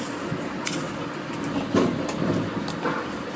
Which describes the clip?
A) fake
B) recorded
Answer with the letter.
B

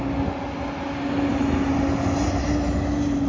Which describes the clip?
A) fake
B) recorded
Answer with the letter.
B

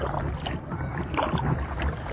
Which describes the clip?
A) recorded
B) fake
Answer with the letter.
A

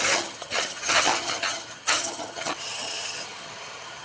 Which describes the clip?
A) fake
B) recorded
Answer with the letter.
A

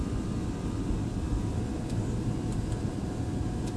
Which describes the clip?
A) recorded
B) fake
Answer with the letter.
A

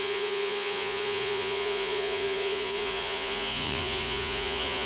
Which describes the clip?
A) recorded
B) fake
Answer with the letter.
B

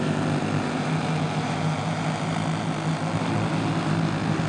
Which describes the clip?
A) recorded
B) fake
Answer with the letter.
A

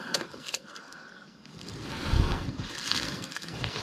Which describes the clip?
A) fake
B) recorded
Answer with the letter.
A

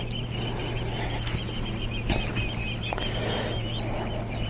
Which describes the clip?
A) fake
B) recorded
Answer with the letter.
B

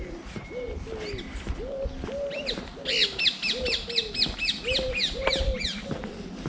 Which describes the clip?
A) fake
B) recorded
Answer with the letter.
B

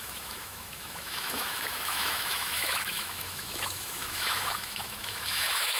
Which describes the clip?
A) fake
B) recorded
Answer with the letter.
A